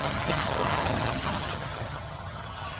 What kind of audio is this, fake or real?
fake